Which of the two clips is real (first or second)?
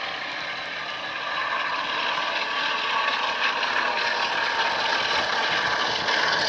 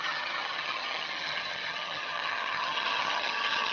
first